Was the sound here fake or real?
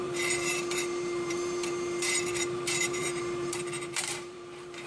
fake